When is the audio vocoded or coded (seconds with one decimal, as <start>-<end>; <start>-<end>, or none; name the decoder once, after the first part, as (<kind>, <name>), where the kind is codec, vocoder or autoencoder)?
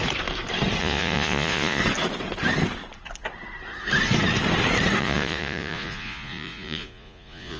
0.8-1.8 (vocoder, Vocos); 5.0-7.6